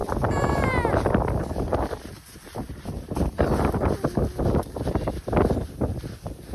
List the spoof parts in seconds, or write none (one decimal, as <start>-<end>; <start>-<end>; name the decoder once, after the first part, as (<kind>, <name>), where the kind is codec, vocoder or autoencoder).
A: none